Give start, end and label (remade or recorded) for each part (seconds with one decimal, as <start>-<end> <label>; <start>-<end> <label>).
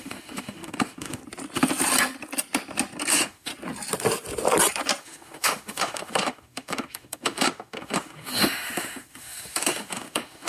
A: 0.0-1.2 remade; 1.2-3.1 recorded; 3.1-3.5 remade; 3.5-5.0 recorded; 5.0-10.5 remade